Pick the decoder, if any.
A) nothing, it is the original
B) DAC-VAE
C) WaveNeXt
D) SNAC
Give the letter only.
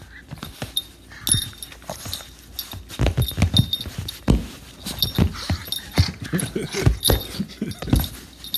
A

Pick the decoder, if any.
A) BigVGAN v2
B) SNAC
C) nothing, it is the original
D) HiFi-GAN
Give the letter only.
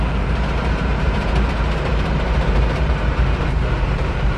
A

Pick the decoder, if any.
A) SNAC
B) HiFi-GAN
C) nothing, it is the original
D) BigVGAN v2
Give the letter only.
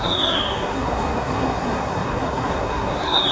A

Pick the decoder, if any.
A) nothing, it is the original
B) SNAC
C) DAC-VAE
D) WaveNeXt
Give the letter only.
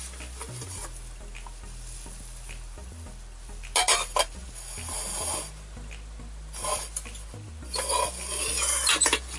A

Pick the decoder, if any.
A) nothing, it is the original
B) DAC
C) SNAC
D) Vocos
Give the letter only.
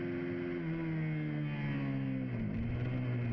A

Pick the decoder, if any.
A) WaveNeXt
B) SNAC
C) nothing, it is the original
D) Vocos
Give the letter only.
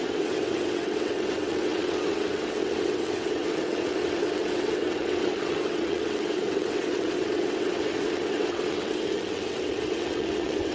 A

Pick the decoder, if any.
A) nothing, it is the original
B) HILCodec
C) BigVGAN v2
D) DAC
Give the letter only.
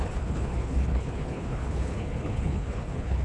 B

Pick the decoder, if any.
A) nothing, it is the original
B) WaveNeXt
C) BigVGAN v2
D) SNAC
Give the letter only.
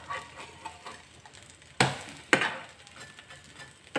A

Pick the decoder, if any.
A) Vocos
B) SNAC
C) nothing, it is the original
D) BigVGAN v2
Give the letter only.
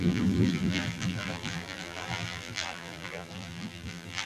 D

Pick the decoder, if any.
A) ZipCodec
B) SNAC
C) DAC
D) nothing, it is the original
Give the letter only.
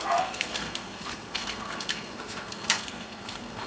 B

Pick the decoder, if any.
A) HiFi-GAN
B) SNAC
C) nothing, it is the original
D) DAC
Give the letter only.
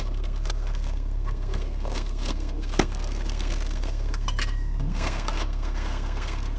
B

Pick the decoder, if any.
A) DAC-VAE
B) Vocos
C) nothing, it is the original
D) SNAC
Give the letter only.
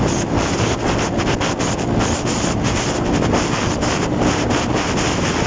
C